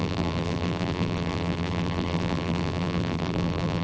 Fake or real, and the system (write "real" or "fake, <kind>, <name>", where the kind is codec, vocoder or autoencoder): fake, vocoder, BigVGAN v2